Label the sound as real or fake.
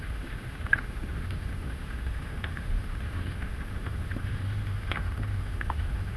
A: fake